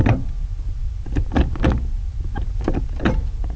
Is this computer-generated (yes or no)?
no